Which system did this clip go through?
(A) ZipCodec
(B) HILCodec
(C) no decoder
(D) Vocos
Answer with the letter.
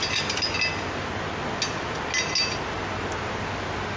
C